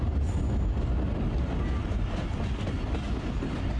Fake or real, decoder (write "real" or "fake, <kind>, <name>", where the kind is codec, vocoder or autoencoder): real